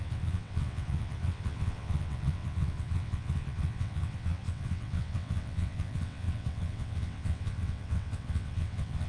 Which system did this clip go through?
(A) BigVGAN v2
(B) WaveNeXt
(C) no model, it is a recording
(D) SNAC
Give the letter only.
B